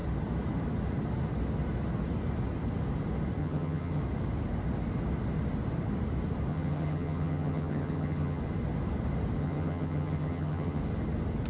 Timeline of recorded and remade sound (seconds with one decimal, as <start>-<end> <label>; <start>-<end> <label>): 0.0-3.4 recorded; 3.4-4.0 remade; 4.0-6.5 recorded; 6.5-8.4 remade; 8.4-9.4 recorded; 9.4-10.8 remade; 10.8-11.5 recorded